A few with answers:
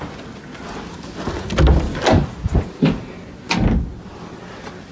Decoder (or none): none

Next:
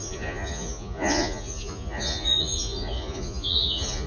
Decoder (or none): vocoder, Vocos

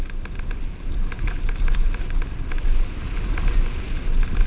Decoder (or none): none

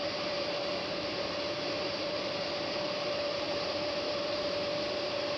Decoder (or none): vocoder, BigVGAN v2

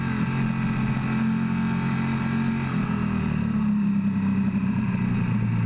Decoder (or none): none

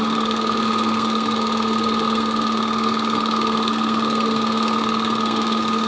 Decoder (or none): codec, SNAC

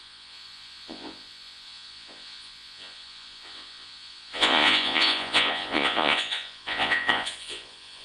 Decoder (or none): vocoder, Vocos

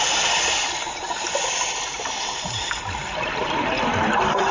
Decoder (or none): none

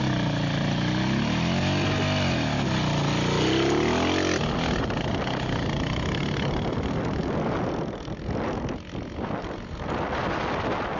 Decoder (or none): none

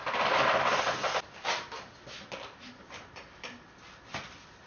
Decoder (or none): none